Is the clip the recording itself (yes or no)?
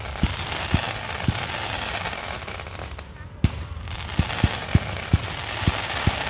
no